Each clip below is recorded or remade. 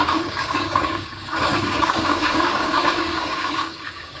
remade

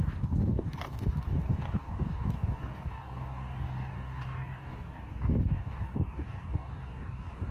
remade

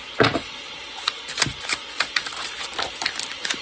recorded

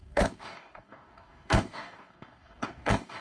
remade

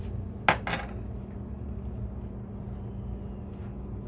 recorded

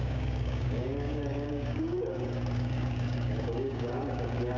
remade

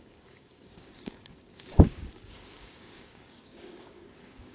remade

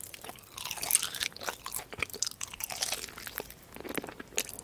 recorded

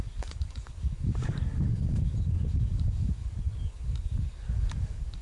remade